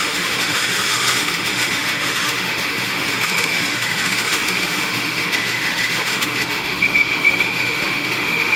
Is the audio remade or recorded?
remade